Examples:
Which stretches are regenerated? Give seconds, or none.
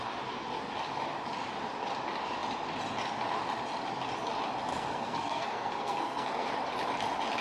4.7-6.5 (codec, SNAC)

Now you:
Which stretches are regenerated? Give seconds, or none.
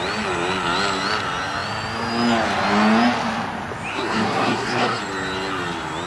3.9-5.0 (codec, SNAC)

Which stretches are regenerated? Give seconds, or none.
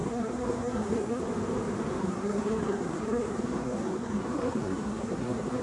0.0-1.2 (codec, SNAC); 2.0-5.6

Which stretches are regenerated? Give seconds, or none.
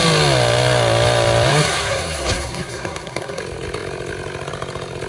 1.5-3.4 (codec, SNAC)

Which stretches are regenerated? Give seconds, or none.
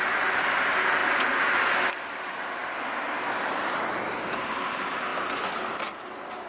none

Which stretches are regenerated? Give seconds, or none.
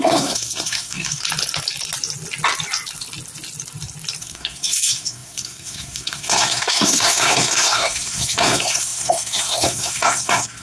0.0-1.2 (codec, SNAC); 4.2-10.6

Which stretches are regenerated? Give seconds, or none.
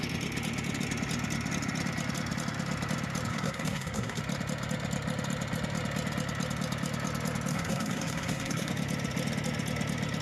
3.3-4.2 (codec, SNAC); 7.5-8.7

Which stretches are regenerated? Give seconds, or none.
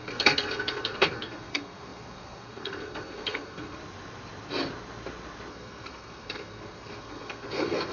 0.0-3.8 (codec, SNAC); 5.5-7.9